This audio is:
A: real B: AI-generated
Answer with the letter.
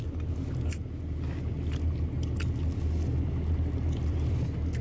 A